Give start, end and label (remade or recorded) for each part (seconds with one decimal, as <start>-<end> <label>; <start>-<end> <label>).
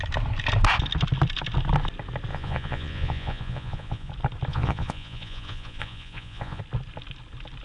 0.0-2.3 recorded; 2.3-4.1 remade; 4.1-4.5 recorded; 4.5-6.6 remade; 6.6-7.6 recorded